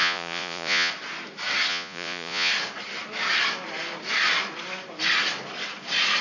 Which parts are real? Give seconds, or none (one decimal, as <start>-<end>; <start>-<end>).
0.9-1.7; 2.5-6.2